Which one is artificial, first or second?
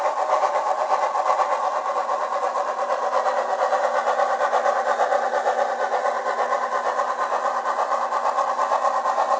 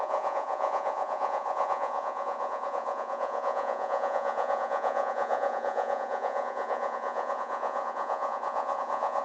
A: second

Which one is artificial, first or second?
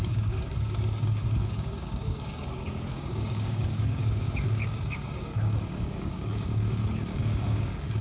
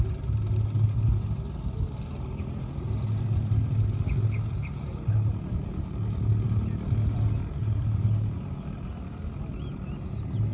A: first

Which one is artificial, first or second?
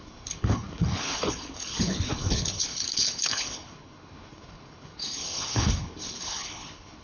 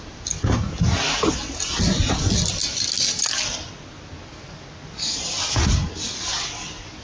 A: first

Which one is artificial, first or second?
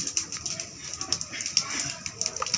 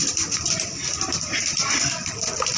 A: second